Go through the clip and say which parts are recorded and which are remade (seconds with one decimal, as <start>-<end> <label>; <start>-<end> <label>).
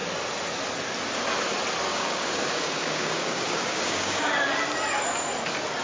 0.0-1.9 recorded; 1.9-4.3 remade; 4.3-5.8 recorded